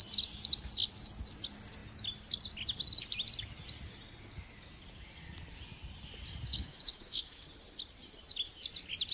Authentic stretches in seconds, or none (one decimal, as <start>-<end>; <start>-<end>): 0.0-6.5; 7.5-9.1